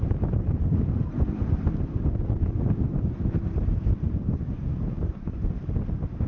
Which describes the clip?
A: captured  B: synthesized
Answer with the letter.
A